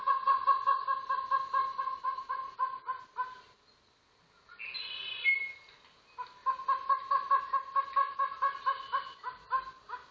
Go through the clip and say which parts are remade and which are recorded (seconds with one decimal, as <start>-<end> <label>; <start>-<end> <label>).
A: 0.0-0.5 remade; 0.5-1.6 recorded; 1.6-3.0 remade; 3.0-10.1 recorded

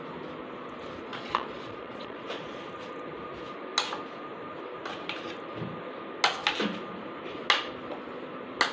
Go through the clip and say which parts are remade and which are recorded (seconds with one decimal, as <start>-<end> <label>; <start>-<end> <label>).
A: 0.0-1.1 recorded; 1.1-2.6 remade; 2.6-8.7 recorded

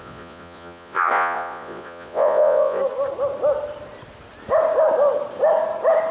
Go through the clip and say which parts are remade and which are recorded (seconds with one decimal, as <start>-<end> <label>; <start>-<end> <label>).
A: 0.0-2.8 remade; 2.8-6.1 recorded

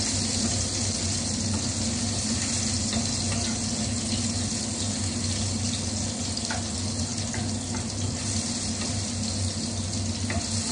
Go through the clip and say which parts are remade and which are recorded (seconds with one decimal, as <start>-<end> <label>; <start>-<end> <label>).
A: 0.0-10.7 recorded